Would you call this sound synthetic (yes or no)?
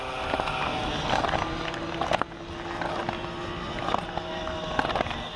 no